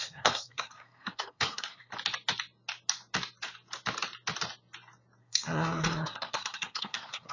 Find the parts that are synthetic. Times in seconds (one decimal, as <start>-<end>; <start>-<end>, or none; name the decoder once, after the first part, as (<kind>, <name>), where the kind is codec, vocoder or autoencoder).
0.0-1.9 (codec, SNAC); 5.2-7.3